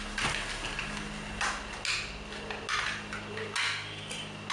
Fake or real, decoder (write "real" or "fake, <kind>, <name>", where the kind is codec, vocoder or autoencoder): real